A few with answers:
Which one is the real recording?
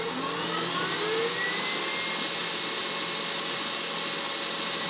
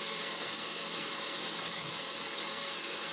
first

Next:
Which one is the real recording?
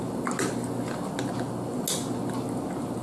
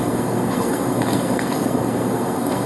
first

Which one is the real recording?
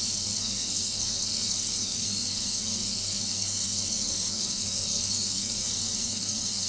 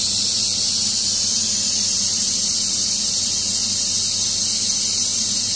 second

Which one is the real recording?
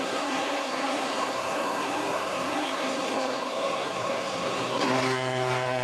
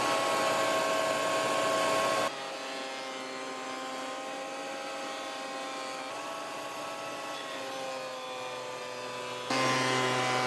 second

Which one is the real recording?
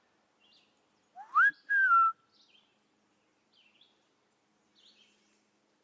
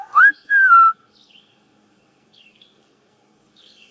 first